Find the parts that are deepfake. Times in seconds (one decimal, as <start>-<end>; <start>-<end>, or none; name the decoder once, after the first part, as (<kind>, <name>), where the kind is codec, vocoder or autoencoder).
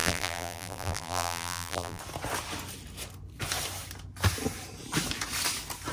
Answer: 0.0-2.0 (vocoder, BigVGAN v2)